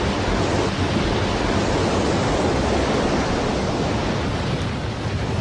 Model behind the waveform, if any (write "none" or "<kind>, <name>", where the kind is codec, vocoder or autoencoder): none